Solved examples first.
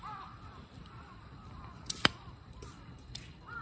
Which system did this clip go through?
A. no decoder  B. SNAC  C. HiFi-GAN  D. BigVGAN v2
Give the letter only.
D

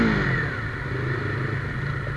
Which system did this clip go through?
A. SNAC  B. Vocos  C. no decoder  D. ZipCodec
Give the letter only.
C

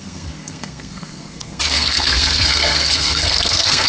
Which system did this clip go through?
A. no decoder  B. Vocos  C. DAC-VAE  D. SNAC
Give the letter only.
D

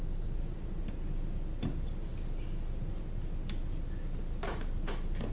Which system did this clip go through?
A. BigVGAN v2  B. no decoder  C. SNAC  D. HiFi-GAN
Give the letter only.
B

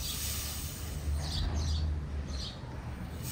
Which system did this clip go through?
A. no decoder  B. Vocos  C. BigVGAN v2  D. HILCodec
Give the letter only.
A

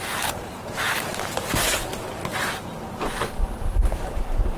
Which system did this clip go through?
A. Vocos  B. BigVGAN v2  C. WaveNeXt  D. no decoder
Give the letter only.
B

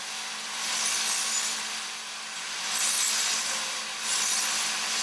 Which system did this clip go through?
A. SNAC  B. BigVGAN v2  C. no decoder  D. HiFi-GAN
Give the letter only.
C